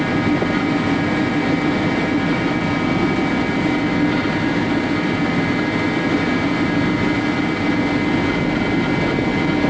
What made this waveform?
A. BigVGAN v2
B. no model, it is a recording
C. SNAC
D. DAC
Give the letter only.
B